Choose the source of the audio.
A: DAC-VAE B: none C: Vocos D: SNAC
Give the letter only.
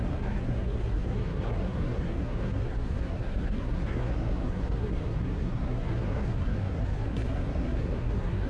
D